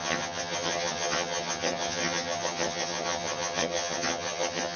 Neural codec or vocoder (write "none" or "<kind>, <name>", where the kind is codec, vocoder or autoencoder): vocoder, HiFi-GAN